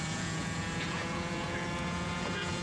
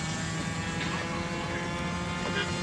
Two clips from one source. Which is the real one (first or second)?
second